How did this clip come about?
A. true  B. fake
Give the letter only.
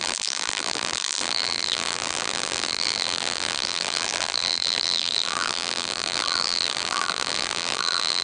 B